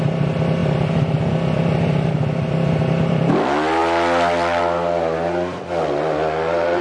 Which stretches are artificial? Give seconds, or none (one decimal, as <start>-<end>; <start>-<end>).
none